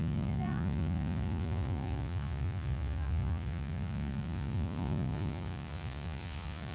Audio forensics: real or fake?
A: fake